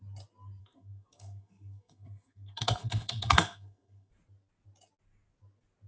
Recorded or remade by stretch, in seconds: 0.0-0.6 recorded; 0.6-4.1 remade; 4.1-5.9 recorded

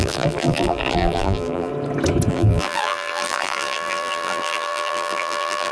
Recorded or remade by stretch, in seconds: 0.0-1.7 remade; 1.7-2.3 recorded; 2.3-5.7 remade